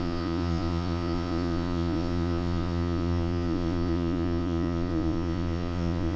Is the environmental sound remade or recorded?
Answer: remade